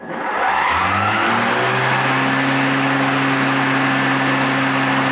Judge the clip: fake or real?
real